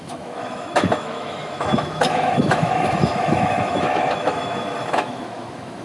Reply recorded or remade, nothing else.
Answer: remade